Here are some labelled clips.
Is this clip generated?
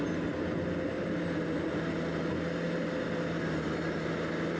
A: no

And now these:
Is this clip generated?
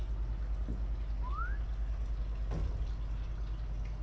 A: no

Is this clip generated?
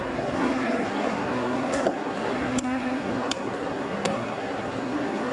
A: yes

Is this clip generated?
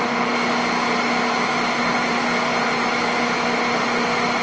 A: no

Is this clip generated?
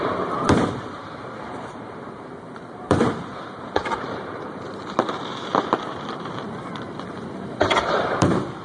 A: yes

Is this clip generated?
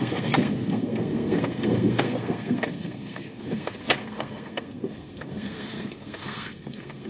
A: yes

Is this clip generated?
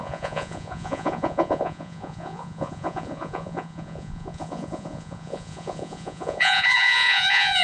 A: yes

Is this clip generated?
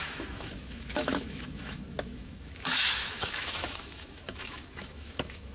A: yes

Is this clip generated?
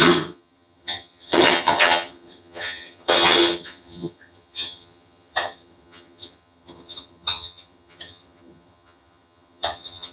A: yes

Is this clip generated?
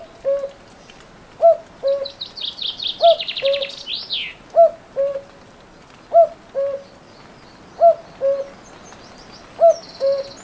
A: no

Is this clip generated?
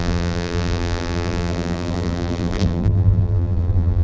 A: yes